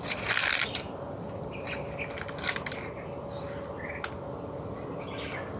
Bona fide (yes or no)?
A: yes